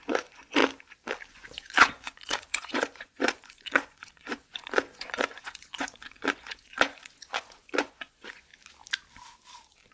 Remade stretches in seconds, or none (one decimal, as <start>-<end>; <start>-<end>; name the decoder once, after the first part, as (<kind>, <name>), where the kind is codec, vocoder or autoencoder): 0.0-0.6 (vocoder, Vocos); 1.3-8.5